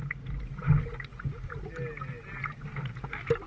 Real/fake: real